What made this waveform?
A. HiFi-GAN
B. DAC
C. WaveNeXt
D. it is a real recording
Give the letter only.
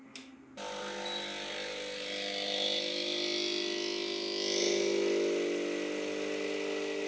D